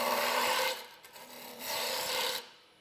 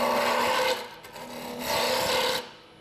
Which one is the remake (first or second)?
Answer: first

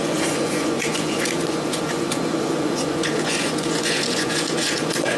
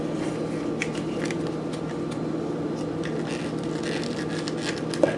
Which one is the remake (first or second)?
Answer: first